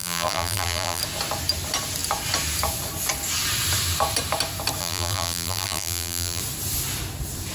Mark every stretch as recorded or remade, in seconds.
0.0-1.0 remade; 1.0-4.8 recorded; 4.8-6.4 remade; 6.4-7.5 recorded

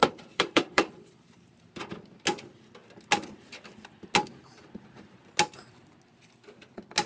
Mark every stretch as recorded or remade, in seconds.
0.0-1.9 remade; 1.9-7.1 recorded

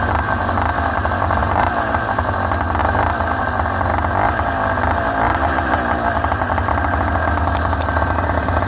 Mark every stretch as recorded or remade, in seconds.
0.0-1.4 recorded; 1.4-2.3 remade; 2.3-8.7 recorded

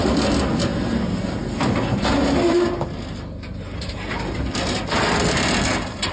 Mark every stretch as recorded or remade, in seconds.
0.0-0.7 remade; 0.7-4.4 recorded; 4.4-6.1 remade

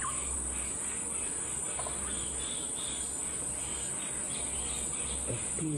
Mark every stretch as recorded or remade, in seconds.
0.0-1.1 recorded; 1.1-2.4 remade; 2.4-3.7 recorded; 3.7-5.8 remade

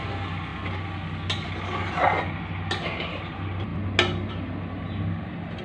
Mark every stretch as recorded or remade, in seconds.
0.0-5.6 recorded